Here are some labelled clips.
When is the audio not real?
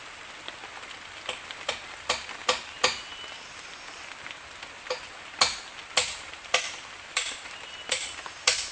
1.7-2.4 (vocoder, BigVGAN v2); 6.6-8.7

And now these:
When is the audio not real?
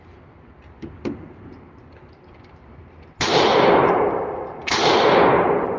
3.5-4.2 (vocoder, BigVGAN v2)